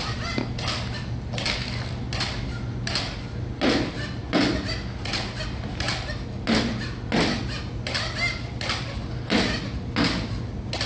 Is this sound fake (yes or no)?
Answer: no